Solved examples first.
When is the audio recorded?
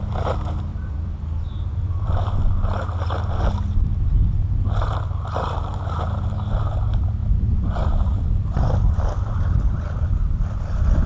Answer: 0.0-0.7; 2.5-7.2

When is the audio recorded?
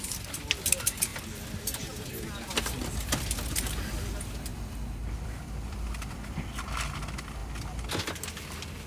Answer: 0.0-4.5; 6.1-8.9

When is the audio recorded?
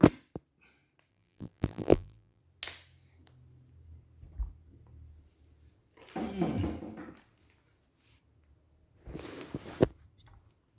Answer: 0.0-1.1; 2.4-10.8